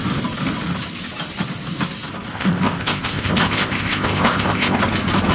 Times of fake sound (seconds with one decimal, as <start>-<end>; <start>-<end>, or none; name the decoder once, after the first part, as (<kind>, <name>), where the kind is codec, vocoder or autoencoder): 2.3-4.8 (codec, ZipCodec)